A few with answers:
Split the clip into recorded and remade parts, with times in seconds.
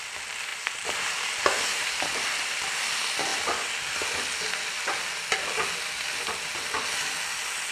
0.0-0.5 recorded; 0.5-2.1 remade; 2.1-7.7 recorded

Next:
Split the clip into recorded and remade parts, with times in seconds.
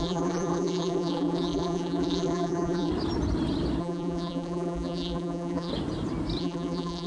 0.0-2.9 remade; 2.9-3.8 recorded; 3.8-5.7 remade; 5.7-6.4 recorded; 6.4-7.1 remade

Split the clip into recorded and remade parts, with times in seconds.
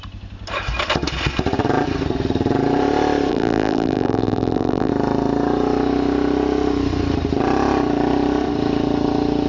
0.0-3.3 recorded; 3.3-4.9 remade; 4.9-9.5 recorded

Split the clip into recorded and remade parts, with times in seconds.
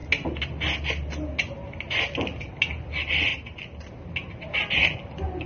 0.0-3.3 recorded; 3.3-3.9 remade; 3.9-5.5 recorded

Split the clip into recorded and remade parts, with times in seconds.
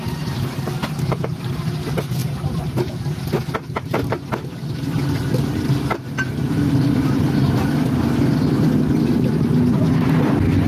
0.0-2.2 recorded; 2.2-2.9 remade; 2.9-10.7 recorded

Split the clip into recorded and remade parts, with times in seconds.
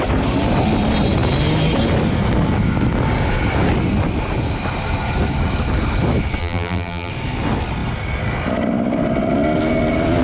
0.0-6.4 recorded; 6.4-7.1 remade; 7.1-10.2 recorded